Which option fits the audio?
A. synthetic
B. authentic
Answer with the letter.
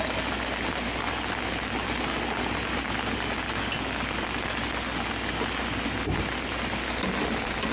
B